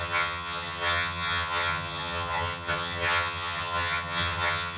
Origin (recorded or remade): remade